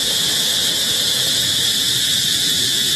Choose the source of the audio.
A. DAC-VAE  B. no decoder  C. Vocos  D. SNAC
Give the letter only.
C